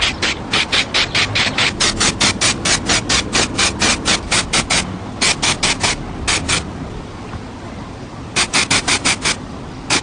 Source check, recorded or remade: recorded